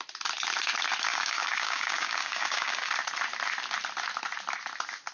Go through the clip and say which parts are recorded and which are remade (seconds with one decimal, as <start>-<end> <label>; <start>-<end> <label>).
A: 0.0-1.1 recorded; 1.1-2.9 remade; 2.9-5.1 recorded